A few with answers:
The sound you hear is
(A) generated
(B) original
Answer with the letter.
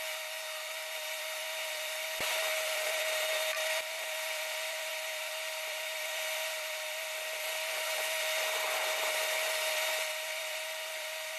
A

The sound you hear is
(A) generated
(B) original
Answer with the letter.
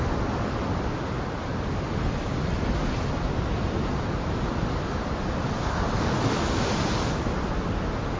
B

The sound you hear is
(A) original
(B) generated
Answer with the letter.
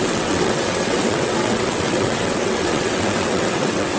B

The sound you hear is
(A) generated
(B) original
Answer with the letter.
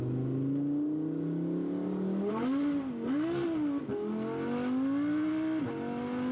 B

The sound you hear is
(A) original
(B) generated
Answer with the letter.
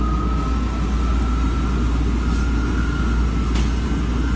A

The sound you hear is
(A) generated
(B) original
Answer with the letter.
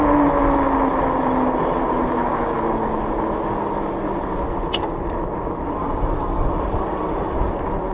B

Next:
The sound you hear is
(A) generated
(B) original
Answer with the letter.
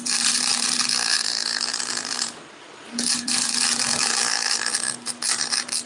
A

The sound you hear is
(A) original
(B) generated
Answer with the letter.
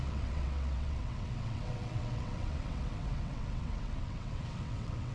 B